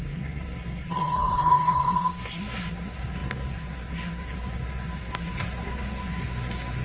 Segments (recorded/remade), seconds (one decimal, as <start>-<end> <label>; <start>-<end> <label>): 0.0-6.8 remade